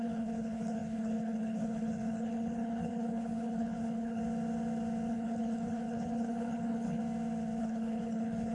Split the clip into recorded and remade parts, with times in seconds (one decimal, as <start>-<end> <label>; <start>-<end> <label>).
0.0-4.2 remade; 4.2-5.1 recorded; 5.1-7.0 remade; 7.0-7.6 recorded; 7.6-8.5 remade